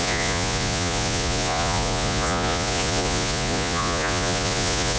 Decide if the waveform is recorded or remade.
remade